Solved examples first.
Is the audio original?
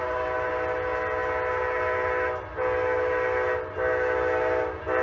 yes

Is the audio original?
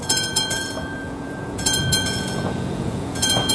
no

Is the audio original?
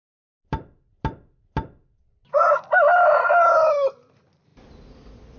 yes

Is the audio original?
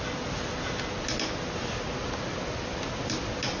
yes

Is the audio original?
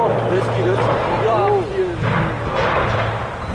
yes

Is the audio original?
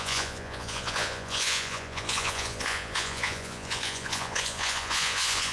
no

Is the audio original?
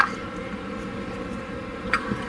yes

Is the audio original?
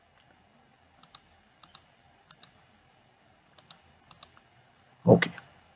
yes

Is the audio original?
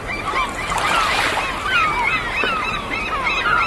yes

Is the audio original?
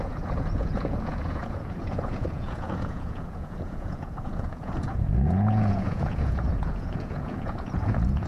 no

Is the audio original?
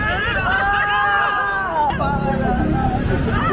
yes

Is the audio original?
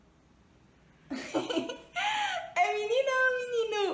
yes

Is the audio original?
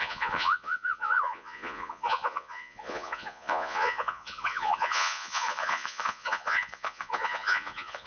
no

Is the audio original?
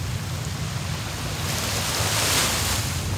yes